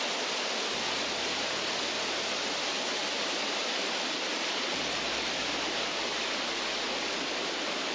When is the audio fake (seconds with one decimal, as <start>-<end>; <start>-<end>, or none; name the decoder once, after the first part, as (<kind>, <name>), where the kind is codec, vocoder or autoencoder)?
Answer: 3.0-6.0 (vocoder, BigVGAN v2)